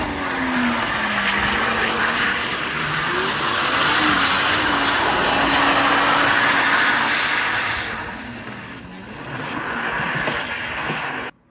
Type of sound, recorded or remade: recorded